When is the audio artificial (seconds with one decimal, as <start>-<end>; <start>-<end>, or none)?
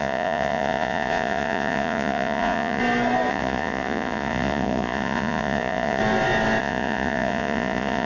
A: 0.0-2.8; 3.3-6.0; 6.6-8.0